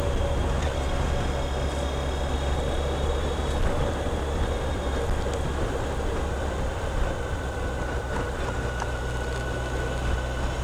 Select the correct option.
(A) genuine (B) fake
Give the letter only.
A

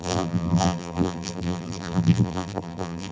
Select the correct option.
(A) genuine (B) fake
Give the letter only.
B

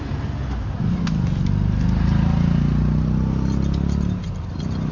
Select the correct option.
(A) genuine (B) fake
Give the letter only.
A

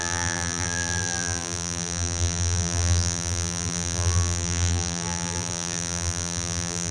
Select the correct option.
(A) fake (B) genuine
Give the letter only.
A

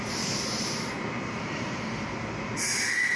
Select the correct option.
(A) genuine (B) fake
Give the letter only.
A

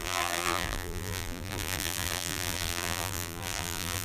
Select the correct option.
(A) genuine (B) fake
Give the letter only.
B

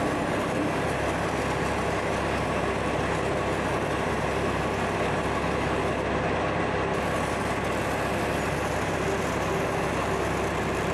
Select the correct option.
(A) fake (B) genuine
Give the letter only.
B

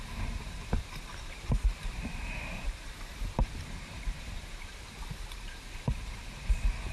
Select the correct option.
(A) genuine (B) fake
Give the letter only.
B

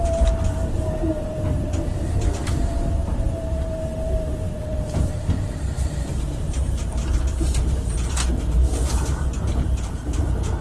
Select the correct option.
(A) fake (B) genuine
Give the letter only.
A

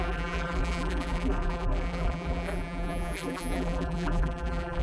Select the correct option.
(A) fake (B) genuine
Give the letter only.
A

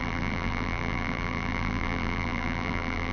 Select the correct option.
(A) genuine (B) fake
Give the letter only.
B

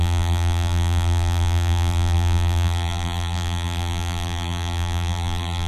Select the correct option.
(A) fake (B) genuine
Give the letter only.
A